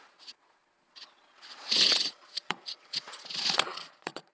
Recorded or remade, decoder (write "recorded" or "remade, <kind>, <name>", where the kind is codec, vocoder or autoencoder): remade, vocoder, Vocos